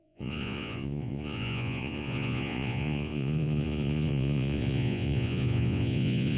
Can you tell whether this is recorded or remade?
remade